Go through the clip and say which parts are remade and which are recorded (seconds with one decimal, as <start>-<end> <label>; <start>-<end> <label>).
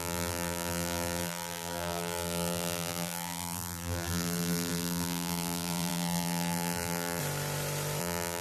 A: 0.0-7.2 remade; 7.2-8.0 recorded; 8.0-8.4 remade